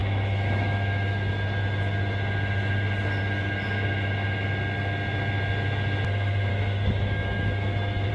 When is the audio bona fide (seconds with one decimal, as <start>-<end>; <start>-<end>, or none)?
1.3-6.5